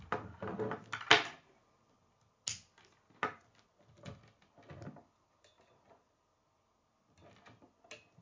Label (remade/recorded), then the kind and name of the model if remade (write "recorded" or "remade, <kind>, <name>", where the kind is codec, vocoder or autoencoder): recorded